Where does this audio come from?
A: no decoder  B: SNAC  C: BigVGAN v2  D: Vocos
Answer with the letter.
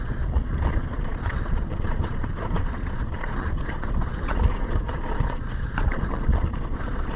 D